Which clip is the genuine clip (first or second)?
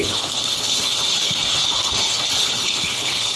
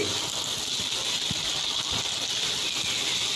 second